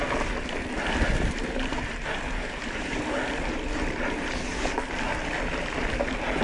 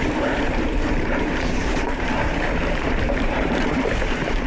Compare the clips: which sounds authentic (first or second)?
first